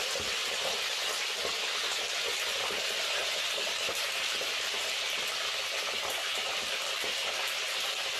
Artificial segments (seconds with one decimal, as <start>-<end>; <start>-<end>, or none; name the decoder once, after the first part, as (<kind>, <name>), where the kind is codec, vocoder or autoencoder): 0.0-0.4 (vocoder, BigVGAN v2); 2.6-8.2

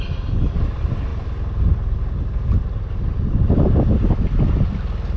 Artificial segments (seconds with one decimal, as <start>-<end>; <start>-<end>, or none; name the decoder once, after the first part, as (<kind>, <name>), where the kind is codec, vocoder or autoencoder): none

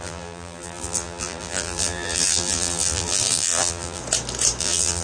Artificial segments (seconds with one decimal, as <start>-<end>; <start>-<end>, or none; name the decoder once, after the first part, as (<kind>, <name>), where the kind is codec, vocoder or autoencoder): 0.0-4.0 (vocoder, BigVGAN v2); 4.6-5.0

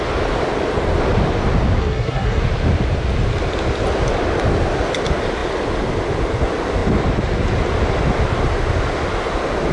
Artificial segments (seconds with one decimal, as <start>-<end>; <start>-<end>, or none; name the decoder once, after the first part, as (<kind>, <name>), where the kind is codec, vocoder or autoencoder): 1.8-2.4 (codec, SNAC)

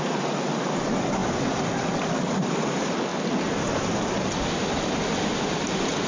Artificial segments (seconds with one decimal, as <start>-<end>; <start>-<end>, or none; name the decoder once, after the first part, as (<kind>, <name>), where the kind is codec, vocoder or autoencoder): 0.0-1.2 (vocoder, BigVGAN v2); 2.4-3.1; 5.5-6.1